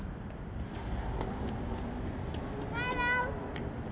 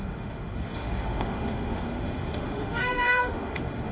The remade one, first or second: second